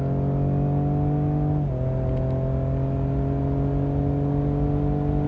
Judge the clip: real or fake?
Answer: real